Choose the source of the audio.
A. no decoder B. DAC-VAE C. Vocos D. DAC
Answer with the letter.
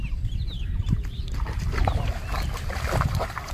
A